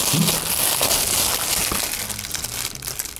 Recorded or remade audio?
recorded